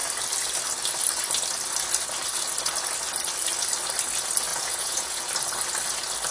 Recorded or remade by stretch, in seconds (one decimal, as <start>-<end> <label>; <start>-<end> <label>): 0.0-4.5 recorded; 4.5-5.2 remade; 5.2-6.3 recorded